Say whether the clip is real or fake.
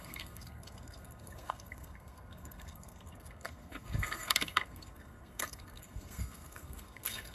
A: fake